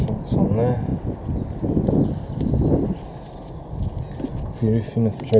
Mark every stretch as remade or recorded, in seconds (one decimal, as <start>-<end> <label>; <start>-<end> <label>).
0.0-5.4 recorded